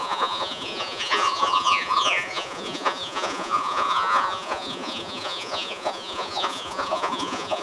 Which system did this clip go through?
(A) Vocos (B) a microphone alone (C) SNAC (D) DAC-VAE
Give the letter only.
A